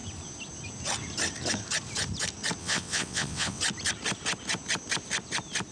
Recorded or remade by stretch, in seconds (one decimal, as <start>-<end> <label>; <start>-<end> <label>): 0.0-2.6 recorded; 2.6-3.6 remade; 3.6-5.7 recorded